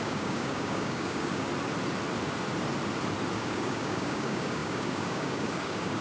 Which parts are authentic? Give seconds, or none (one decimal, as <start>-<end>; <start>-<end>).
1.5-3.3